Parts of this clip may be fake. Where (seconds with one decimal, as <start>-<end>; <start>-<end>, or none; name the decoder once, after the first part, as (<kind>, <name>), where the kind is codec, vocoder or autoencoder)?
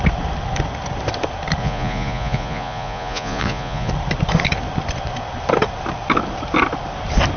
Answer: 1.6-3.9 (vocoder, Vocos)